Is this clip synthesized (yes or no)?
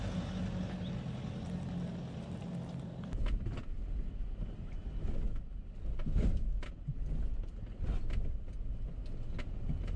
no